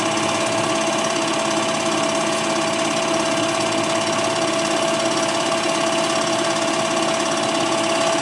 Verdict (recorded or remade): recorded